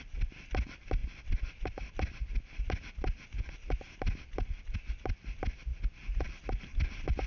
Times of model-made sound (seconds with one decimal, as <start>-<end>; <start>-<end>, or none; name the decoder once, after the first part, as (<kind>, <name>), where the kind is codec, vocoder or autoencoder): none